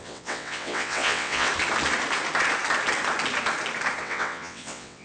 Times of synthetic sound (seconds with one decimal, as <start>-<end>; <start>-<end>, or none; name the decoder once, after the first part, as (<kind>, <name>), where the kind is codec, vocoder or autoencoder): 0.0-1.5 (vocoder, WaveNeXt); 4.0-5.0